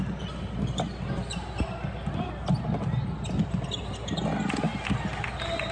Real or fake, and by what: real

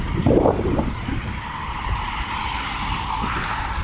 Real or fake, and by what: real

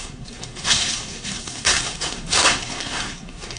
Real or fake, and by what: fake, codec, SNAC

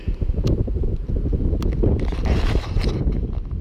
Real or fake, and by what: real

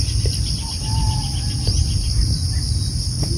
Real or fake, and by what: real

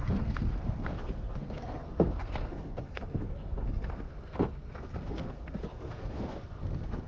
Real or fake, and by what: fake, codec, SNAC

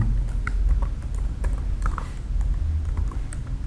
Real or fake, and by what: real